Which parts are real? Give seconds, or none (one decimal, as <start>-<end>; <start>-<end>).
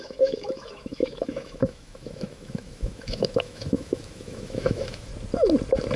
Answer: 5.1-6.0